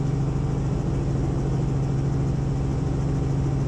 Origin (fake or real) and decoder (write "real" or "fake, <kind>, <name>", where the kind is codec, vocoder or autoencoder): real